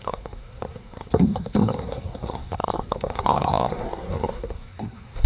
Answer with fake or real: fake